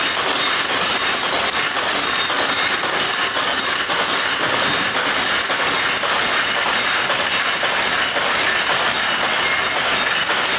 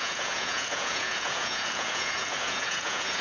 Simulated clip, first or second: second